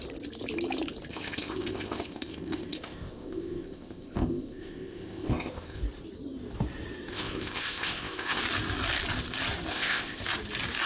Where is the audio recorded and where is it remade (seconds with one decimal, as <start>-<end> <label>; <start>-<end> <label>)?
0.0-1.1 recorded; 1.1-5.8 remade; 5.8-7.1 recorded; 7.1-8.4 remade; 8.4-9.7 recorded; 9.7-10.2 remade; 10.2-10.9 recorded